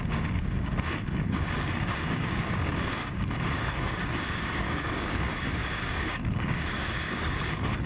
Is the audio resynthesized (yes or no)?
yes